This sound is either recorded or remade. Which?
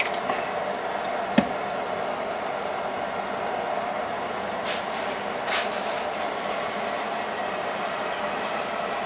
recorded